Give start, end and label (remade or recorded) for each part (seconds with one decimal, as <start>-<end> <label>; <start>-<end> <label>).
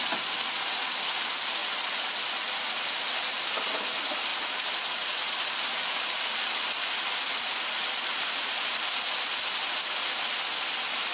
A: 0.0-4.3 recorded; 4.3-6.2 remade; 6.2-11.1 recorded